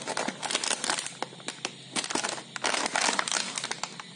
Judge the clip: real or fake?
real